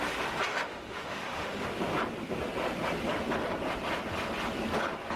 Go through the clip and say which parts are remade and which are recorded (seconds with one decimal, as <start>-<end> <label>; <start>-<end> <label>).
0.0-0.5 recorded; 0.5-1.9 remade; 1.9-5.2 recorded